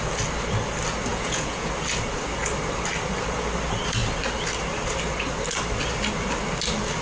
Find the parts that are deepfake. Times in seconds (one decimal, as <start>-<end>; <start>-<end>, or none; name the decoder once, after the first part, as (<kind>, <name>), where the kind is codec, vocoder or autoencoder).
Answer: 1.1-1.7 (vocoder, Vocos)